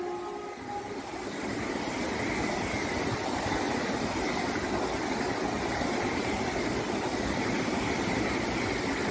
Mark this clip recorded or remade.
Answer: recorded